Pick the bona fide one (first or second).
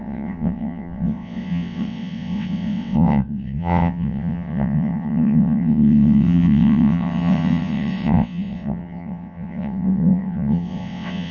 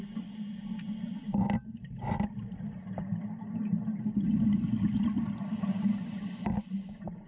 second